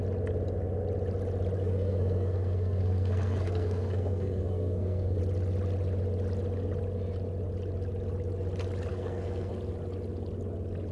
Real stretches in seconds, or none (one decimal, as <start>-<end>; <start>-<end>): 0.0-1.6; 5.2-8.9; 9.5-10.9